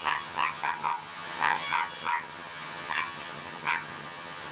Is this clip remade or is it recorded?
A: remade